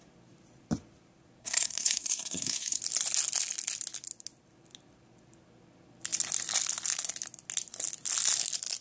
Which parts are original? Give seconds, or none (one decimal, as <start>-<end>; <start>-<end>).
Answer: 0.0-1.4; 2.8-8.8